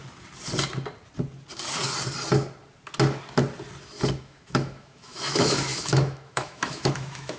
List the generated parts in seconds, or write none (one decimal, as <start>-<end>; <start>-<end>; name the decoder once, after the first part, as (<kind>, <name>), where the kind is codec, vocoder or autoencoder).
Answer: 4.2-7.4 (autoencoder, DAC-VAE)